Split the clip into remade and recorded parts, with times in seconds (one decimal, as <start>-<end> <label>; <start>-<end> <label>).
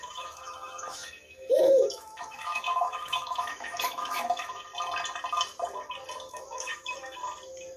0.0-4.7 remade; 4.7-6.3 recorded; 6.3-7.2 remade; 7.2-7.8 recorded